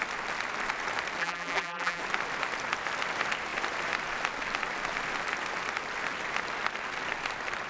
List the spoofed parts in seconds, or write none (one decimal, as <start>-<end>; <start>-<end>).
1.2-2.0